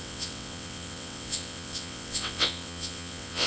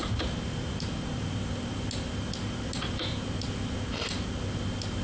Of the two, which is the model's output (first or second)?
first